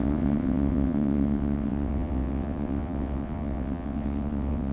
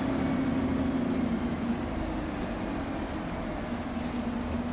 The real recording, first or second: second